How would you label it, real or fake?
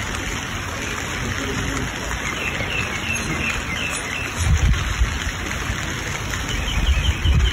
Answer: real